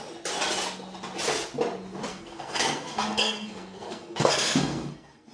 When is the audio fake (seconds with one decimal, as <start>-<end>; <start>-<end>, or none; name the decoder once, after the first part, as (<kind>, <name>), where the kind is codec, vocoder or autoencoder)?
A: 2.1-5.3 (codec, SNAC)